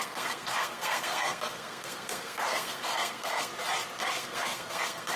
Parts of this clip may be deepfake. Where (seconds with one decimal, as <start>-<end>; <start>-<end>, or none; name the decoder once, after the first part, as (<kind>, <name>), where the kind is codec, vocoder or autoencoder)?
0.0-3.5 (codec, SNAC); 4.0-5.2